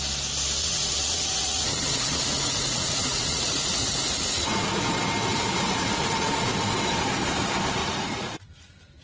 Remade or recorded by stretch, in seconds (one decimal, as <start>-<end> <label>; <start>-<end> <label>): 0.0-0.6 recorded; 0.6-4.8 remade; 4.8-5.3 recorded; 5.3-6.5 remade; 6.5-7.8 recorded; 7.8-8.5 remade; 8.5-9.0 recorded